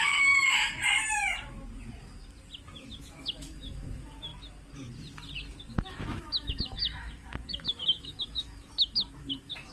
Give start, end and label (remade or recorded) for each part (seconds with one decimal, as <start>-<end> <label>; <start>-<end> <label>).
0.0-0.6 remade; 0.6-3.0 recorded; 3.0-4.3 remade; 4.3-5.7 recorded; 5.7-9.7 remade